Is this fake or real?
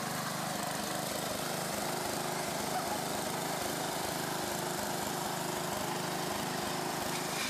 real